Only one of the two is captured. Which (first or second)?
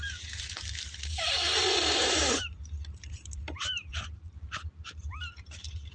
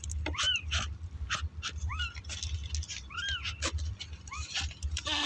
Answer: second